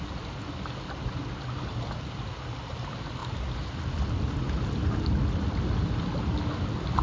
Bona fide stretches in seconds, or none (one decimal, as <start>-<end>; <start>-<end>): 0.0-7.0